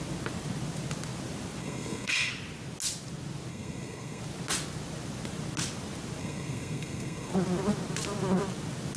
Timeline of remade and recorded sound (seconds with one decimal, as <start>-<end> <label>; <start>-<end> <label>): 0.0-1.6 recorded; 1.6-2.3 remade; 2.3-3.5 recorded; 3.5-4.2 remade; 4.2-6.2 recorded; 6.2-7.3 remade; 7.3-9.0 recorded